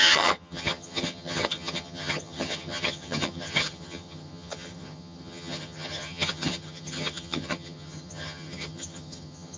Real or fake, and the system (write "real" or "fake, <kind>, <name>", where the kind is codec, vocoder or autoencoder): fake, vocoder, HiFi-GAN